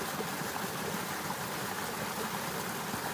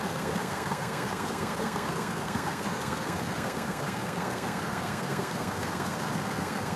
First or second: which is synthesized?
second